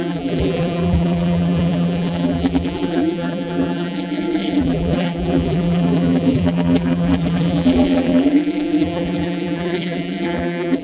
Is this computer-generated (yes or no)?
yes